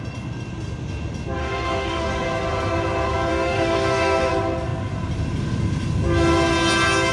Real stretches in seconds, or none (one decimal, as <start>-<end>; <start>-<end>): 0.0-1.4; 2.1-3.3; 4.3-7.1